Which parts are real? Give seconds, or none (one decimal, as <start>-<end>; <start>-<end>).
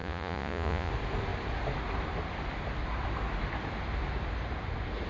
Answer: 0.9-5.1